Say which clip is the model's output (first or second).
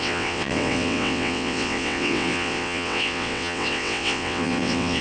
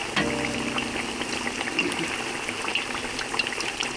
first